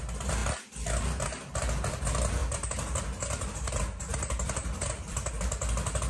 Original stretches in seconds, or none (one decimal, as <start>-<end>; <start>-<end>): 0.0-2.4; 5.3-6.1